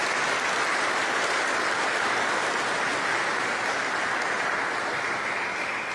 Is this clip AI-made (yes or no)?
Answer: no